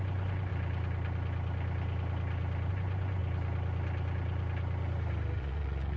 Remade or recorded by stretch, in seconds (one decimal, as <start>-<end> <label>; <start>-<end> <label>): 0.0-0.5 remade; 0.5-2.7 recorded; 2.7-3.2 remade; 3.2-5.4 recorded; 5.4-6.0 remade